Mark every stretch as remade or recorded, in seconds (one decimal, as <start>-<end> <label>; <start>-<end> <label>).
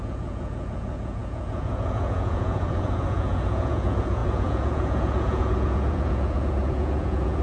0.0-7.4 remade